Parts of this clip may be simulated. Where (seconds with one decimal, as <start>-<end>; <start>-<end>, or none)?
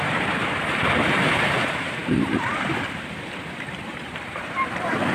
0.0-5.1